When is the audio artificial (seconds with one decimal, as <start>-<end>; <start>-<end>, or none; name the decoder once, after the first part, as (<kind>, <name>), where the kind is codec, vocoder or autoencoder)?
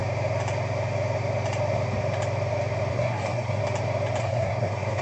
2.9-3.6 (codec, SNAC); 4.2-5.0